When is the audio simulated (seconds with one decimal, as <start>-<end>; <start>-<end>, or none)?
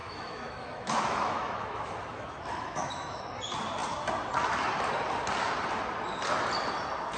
0.0-3.2